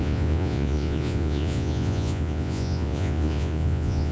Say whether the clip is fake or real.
fake